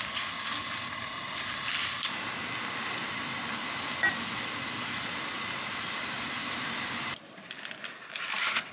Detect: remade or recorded recorded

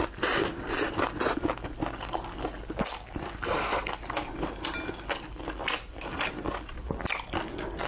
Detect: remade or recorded recorded